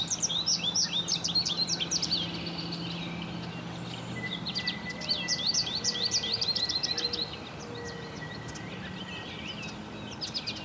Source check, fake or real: real